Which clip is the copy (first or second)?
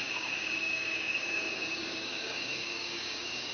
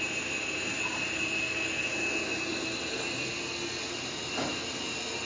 first